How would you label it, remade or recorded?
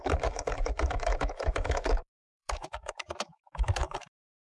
remade